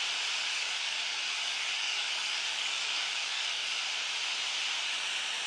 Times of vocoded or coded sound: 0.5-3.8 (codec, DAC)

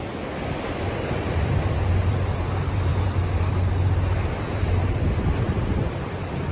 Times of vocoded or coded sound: 0.0-6.5 (vocoder, BigVGAN v2)

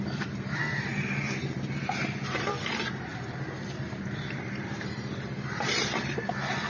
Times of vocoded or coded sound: 0.0-6.7 (vocoder, BigVGAN v2)

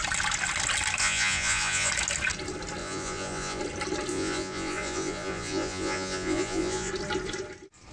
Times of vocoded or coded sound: 1.0-1.9 (vocoder, Vocos); 2.8-3.6; 4.1-6.9